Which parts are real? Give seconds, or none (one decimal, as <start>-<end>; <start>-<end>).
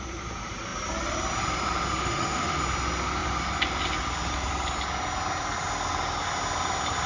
0.0-2.0; 2.6-7.1